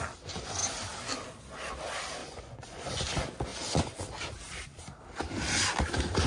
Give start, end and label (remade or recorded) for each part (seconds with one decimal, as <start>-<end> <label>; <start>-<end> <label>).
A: 0.0-2.2 recorded; 2.2-3.1 remade; 3.1-3.5 recorded; 3.5-4.0 remade; 4.0-6.3 recorded